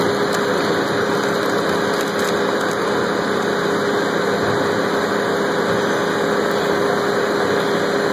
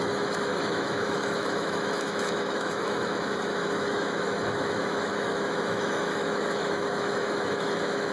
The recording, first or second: first